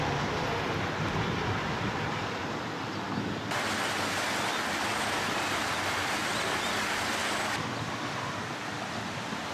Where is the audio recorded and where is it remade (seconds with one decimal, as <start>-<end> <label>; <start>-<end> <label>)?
0.0-9.5 recorded